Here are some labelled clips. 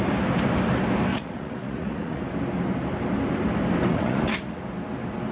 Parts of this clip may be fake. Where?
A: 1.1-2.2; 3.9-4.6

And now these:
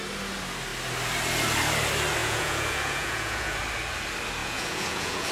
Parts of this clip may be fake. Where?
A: 2.2-3.6; 4.4-5.3

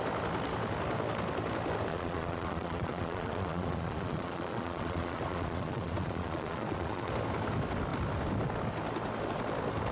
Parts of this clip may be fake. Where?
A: 1.9-7.1

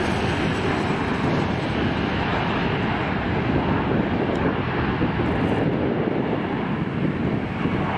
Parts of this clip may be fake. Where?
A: none

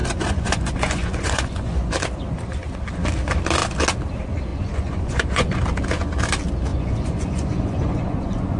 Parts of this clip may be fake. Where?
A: 0.0-1.9; 4.5-5.6; 6.7-8.6

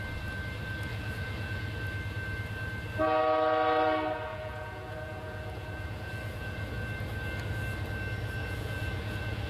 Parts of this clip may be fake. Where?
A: 0.9-1.7; 4.3-6.7; 8.4-9.5